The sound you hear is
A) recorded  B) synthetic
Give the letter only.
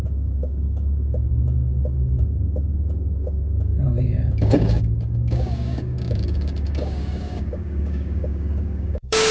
B